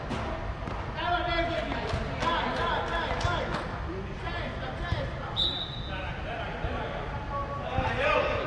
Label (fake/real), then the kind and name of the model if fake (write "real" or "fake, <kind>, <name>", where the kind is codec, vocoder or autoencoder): real